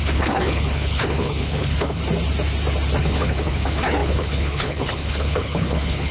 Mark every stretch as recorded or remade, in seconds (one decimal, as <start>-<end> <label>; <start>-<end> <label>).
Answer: 0.0-2.0 remade; 2.0-3.0 recorded; 3.0-6.1 remade